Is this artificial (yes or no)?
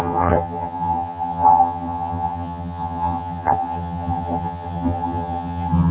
yes